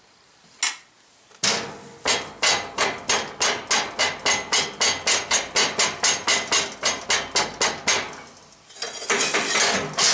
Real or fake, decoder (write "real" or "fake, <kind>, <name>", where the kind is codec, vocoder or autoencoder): real